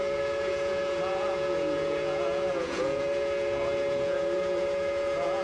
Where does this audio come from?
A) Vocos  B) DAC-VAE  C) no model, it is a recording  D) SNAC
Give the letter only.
A